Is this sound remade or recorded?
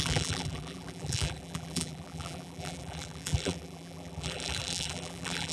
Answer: remade